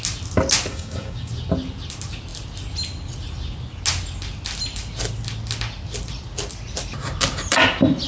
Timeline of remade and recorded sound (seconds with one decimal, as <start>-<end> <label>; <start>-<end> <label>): 0.0-0.7 recorded; 0.7-1.3 remade; 1.3-8.1 recorded